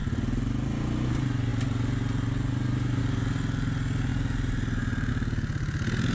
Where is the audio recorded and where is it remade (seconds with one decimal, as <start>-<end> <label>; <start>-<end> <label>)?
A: 0.0-4.1 recorded; 4.1-5.1 remade; 5.1-6.1 recorded